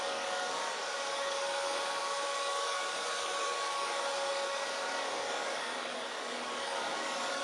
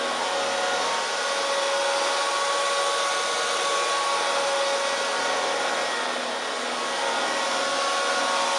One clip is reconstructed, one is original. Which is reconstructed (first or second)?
first